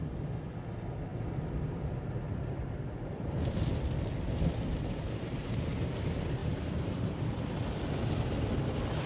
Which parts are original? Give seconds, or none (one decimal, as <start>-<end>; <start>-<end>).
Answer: 0.0-1.1; 1.6-2.6; 5.4-6.4; 8.5-9.1